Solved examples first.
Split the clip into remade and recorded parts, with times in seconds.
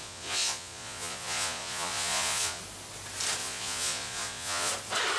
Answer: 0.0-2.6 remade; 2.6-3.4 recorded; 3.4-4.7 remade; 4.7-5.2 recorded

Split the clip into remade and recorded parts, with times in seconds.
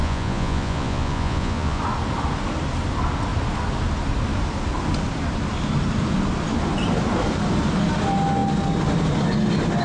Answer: 0.0-1.8 remade; 1.8-9.8 recorded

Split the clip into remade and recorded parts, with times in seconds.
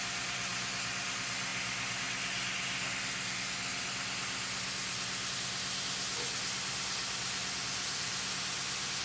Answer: 0.0-9.0 recorded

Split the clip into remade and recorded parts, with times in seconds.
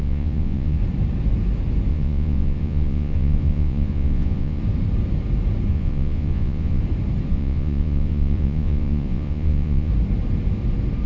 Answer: 0.0-0.8 remade; 0.8-1.9 recorded; 1.9-4.6 remade; 4.6-5.7 recorded; 5.7-6.8 remade; 6.8-7.3 recorded; 7.3-9.9 remade; 9.9-11.1 recorded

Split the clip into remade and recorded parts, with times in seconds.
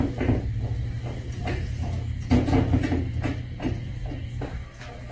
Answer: 0.0-1.4 recorded; 1.4-3.3 remade; 3.3-5.1 recorded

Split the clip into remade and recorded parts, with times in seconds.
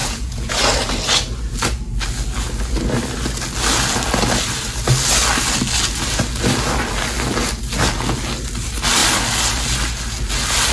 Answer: 0.0-0.5 remade; 0.5-10.7 recorded